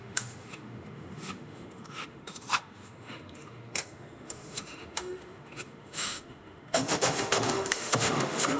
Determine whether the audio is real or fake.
fake